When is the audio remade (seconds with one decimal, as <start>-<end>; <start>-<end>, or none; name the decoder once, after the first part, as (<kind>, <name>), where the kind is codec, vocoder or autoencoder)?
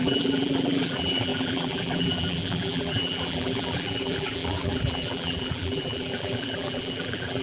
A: 0.0-7.4 (vocoder, BigVGAN v2)